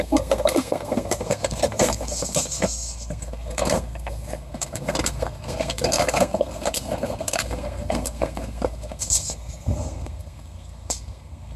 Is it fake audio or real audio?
fake